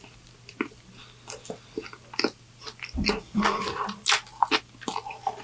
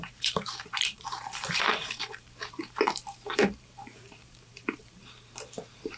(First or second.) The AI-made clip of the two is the second